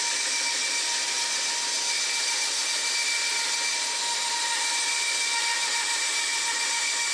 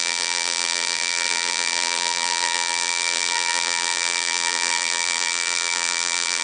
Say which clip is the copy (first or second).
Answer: second